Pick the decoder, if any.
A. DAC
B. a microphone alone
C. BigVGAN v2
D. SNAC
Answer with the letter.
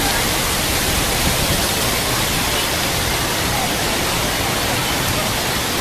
C